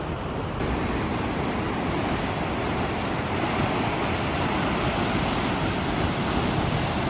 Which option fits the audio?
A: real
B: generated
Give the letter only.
A